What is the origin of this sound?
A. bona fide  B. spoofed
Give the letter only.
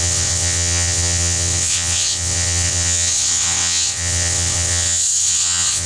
B